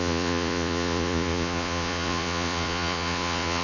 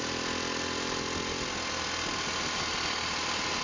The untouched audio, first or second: second